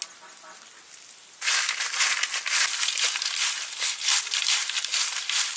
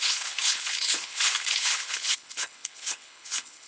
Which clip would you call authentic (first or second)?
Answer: first